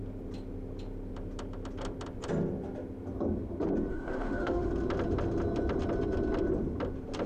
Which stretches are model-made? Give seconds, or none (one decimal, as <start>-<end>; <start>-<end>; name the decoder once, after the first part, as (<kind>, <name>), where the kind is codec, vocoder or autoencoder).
3.9-4.7 (autoencoder, DAC-VAE)